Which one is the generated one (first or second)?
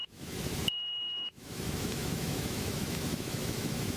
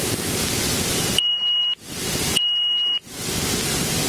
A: first